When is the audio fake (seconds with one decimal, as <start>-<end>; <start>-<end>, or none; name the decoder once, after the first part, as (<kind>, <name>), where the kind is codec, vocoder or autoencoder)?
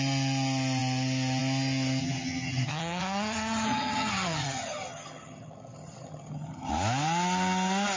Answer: 2.0-6.7 (vocoder, HiFi-GAN)